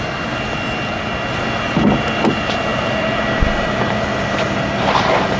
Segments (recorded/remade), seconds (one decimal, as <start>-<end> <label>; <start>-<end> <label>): 0.0-5.4 recorded